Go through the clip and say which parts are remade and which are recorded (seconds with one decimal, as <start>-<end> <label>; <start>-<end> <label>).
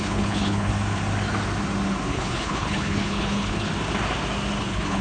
0.0-0.7 remade; 0.7-2.1 recorded; 2.1-3.7 remade; 3.7-4.6 recorded; 4.6-5.0 remade